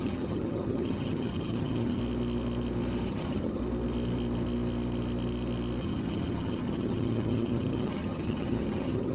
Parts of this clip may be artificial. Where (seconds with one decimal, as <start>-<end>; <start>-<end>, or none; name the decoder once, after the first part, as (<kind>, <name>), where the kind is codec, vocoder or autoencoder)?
0.0-2.0 (vocoder, HiFi-GAN); 3.1-3.6; 5.8-9.1

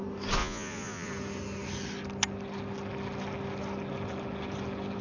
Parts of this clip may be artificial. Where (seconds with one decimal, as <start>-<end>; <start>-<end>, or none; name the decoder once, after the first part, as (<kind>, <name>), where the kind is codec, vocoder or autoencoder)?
0.4-1.1 (vocoder, Vocos)

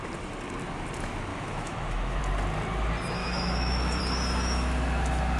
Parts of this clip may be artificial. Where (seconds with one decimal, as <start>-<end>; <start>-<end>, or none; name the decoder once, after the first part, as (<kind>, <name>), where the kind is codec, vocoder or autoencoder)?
1.3-2.2 (autoencoder, DAC-VAE); 3.2-4.0